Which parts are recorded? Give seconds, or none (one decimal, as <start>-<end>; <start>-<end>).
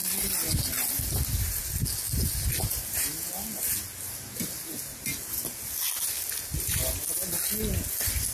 0.0-8.3